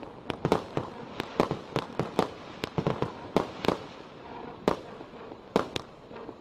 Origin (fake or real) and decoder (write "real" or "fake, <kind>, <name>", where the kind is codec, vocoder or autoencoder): real